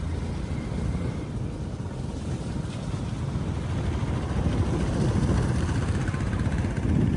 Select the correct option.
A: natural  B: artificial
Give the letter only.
A